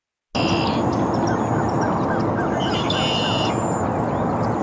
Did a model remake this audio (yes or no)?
no